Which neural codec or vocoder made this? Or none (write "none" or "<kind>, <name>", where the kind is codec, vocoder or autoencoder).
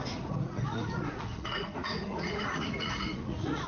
vocoder, Vocos